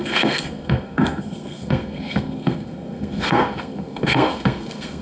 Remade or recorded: remade